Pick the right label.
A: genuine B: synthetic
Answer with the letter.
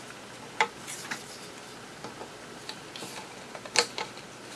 A